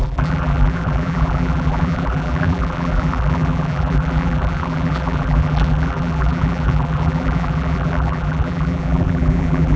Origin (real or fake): fake